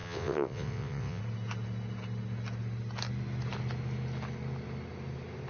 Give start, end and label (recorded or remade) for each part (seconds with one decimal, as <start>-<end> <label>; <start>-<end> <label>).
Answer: 0.0-1.2 remade; 1.2-5.5 recorded